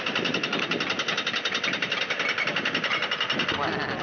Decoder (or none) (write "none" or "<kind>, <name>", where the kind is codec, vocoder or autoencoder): none